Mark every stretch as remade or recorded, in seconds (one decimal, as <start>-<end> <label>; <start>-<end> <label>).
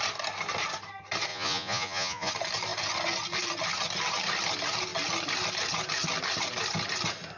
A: 0.0-1.3 recorded; 1.3-2.3 remade; 2.3-7.4 recorded